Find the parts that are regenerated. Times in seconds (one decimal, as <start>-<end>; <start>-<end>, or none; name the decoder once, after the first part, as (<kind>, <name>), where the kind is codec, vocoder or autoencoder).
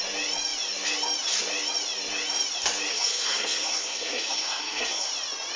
2.9-5.1 (codec, SNAC)